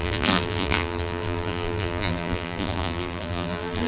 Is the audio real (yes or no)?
no